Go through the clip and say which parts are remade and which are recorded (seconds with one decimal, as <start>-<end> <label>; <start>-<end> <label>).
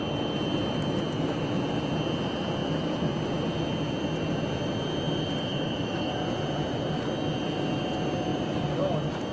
0.0-5.5 recorded; 5.5-6.1 remade; 6.1-9.3 recorded